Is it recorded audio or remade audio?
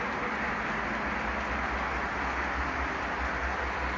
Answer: recorded